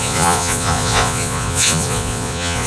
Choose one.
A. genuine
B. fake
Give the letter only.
B